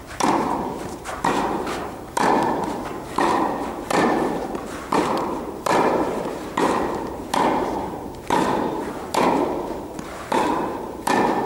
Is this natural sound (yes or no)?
no